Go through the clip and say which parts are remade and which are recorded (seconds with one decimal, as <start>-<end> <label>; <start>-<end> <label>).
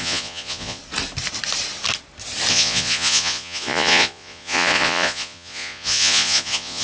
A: 0.0-0.8 remade; 0.8-2.5 recorded; 2.5-6.8 remade